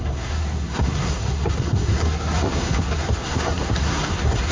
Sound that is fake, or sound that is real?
fake